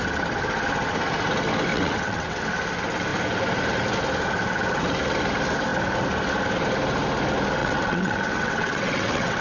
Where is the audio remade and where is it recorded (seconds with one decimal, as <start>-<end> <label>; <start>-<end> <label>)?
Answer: 0.0-1.7 recorded; 1.7-2.4 remade; 2.4-7.6 recorded; 7.6-9.4 remade